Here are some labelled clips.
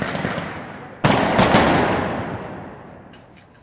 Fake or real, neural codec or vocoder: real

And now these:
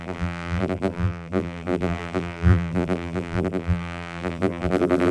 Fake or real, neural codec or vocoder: fake, vocoder, BigVGAN v2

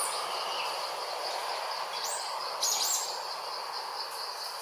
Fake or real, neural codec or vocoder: real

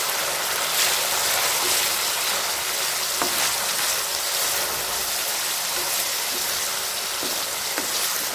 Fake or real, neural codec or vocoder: real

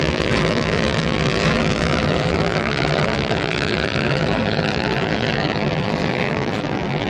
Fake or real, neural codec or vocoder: fake, vocoder, BigVGAN v2